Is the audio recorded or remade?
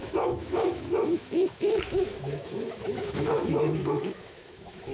remade